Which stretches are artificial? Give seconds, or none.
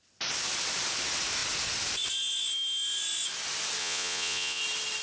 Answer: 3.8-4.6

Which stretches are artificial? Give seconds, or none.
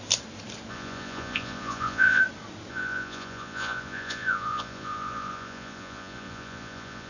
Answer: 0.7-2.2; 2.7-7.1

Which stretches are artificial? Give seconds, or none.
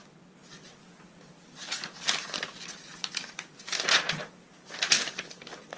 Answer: none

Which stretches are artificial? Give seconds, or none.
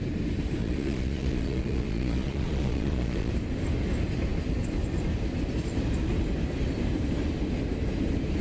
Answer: 0.6-3.3